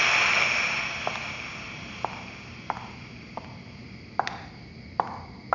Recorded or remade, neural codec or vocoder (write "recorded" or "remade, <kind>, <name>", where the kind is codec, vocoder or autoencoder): recorded